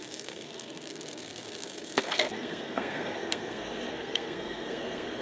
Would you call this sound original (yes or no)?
no